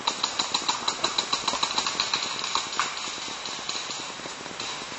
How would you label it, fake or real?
real